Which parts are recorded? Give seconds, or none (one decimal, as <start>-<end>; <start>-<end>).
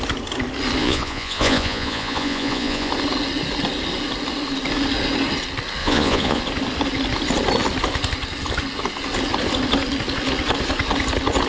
0.0-0.8; 2.9-5.8; 6.4-11.5